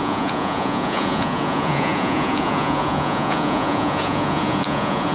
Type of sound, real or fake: fake